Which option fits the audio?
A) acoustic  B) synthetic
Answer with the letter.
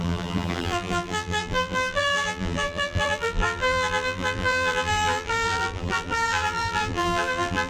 B